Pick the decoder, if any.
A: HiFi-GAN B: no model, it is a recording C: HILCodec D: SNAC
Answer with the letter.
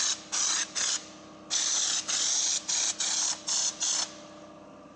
B